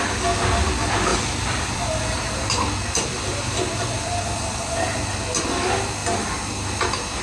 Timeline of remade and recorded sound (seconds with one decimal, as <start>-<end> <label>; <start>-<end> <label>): 0.0-1.1 recorded; 1.1-2.0 remade; 2.0-6.0 recorded; 6.0-6.6 remade; 6.6-7.2 recorded